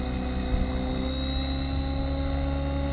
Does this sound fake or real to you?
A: real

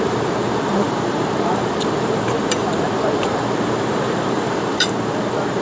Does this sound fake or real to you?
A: fake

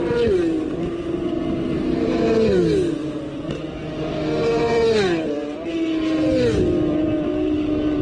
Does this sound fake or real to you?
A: real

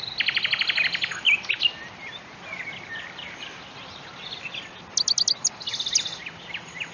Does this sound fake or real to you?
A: real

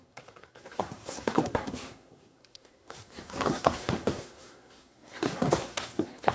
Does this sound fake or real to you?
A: fake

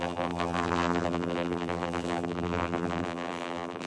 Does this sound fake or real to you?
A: fake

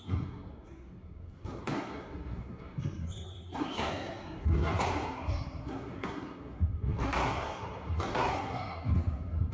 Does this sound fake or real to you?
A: fake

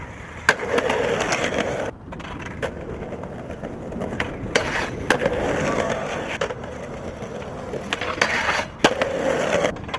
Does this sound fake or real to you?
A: real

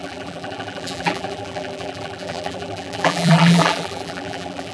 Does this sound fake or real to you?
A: fake